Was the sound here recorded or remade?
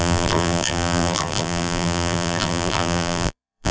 remade